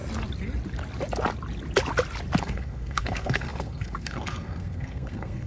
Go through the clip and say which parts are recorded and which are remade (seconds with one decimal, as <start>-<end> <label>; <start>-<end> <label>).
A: 0.0-2.4 recorded; 2.4-5.5 remade